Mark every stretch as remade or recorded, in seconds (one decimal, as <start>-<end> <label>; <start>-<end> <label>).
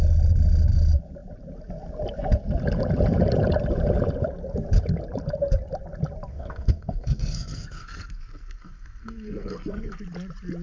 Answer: 0.0-6.3 recorded; 6.3-10.0 remade; 10.0-10.6 recorded